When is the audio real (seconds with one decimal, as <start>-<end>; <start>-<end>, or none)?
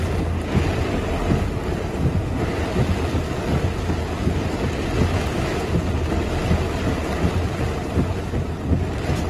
0.0-6.4; 7.4-9.3